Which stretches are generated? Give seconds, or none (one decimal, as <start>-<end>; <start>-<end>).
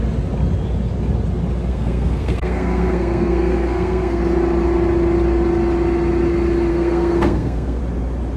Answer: 1.7-4.2; 6.7-7.8